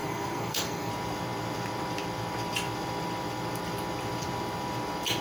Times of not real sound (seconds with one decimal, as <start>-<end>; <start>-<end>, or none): 0.0-0.9